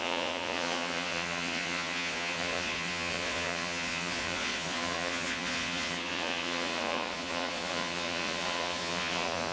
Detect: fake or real fake